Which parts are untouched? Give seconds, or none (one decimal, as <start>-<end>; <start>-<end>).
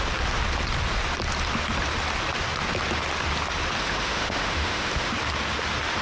0.0-3.8; 5.1-6.0